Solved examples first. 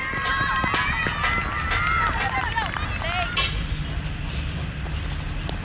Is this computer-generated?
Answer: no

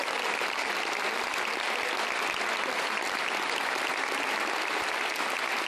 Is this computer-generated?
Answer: no